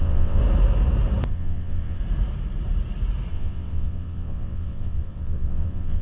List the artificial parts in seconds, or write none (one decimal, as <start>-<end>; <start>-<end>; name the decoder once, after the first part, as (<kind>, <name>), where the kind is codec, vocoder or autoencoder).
0.0-0.4 (vocoder, WaveNeXt); 1.3-2.0; 3.3-6.0